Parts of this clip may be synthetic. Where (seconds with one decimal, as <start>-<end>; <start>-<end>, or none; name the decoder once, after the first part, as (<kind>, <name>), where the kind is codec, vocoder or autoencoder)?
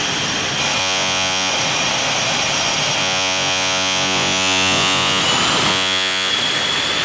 0.8-1.5 (vocoder, Vocos); 3.0-5.2; 5.7-6.3